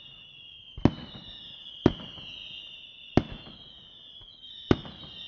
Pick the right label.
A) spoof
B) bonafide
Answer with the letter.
B